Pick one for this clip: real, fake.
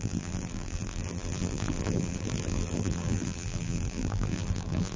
fake